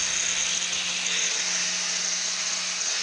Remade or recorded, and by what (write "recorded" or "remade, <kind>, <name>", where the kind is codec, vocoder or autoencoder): recorded